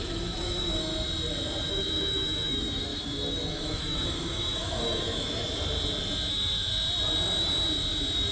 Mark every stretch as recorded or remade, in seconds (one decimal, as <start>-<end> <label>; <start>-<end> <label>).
0.0-0.9 remade; 0.9-1.7 recorded; 1.7-5.4 remade; 5.4-6.3 recorded; 6.3-6.7 remade; 6.7-8.3 recorded